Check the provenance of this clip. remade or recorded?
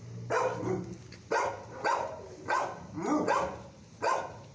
recorded